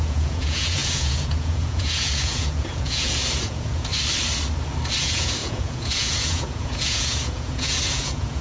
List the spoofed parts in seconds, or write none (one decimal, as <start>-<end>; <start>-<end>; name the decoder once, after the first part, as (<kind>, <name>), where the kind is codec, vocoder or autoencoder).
0.0-3.9 (vocoder, Vocos); 5.0-8.4